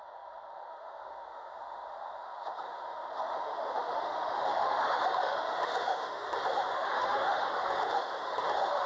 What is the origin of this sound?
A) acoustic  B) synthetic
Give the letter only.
B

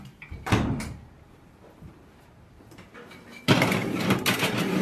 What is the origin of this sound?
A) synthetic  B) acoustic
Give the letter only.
A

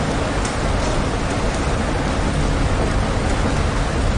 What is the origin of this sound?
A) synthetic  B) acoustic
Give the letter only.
B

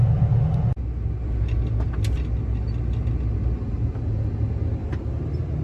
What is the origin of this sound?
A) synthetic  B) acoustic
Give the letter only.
B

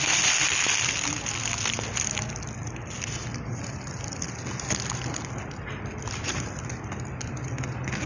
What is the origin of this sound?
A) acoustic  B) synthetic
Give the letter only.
A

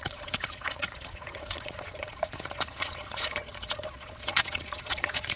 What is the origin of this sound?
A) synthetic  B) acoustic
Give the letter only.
A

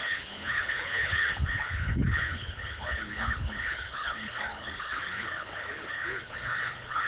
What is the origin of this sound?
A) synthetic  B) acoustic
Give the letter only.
A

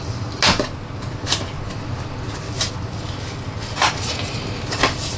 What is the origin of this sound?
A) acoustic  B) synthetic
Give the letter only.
A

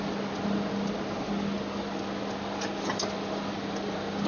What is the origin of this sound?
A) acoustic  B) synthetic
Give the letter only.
A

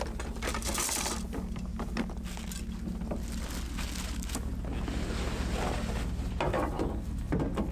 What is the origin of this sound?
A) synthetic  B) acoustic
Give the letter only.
B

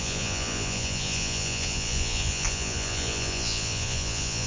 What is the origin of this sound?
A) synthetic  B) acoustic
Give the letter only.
A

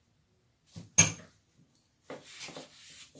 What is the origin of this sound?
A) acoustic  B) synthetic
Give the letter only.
A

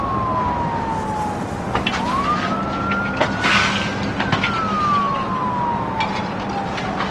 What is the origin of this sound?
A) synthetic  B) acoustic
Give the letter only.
B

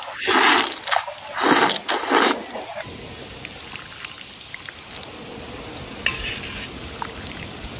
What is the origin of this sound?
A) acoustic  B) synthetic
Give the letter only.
A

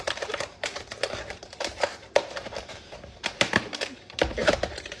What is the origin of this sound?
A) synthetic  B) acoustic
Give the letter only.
A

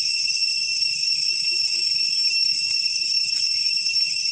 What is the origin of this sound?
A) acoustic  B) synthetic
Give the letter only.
B